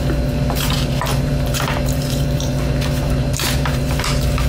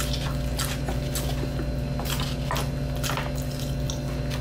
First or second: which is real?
second